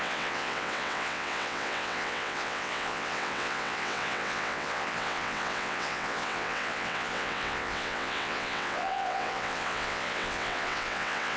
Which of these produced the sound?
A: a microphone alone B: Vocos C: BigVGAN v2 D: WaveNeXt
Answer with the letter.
D